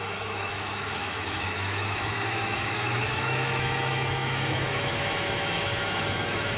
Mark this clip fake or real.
fake